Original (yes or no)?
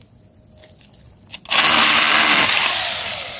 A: yes